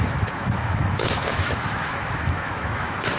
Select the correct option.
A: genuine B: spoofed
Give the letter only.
B